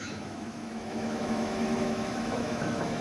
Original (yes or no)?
no